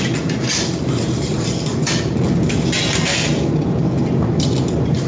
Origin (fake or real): real